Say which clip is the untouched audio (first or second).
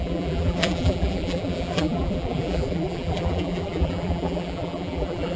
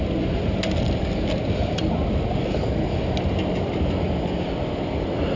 second